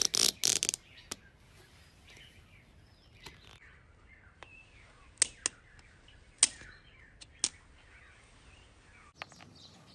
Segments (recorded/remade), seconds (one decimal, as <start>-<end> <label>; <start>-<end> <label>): 0.0-9.9 recorded